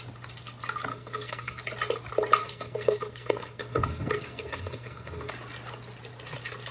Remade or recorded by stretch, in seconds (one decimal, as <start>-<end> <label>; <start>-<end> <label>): 0.0-0.9 recorded; 0.9-1.6 remade; 1.6-2.4 recorded; 2.4-5.3 remade; 5.3-6.7 recorded